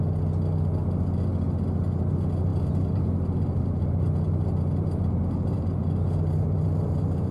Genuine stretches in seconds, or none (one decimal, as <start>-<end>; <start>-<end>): 0.0-2.5

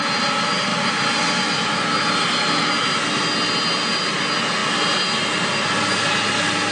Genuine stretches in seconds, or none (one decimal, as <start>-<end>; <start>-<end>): 0.0-6.7